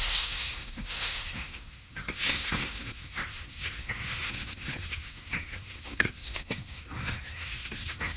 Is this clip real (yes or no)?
no